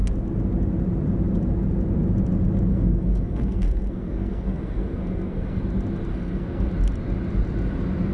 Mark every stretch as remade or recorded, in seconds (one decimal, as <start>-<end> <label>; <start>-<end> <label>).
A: 0.0-2.7 recorded; 2.7-5.6 remade; 5.6-6.1 recorded; 6.1-6.7 remade; 6.7-8.1 recorded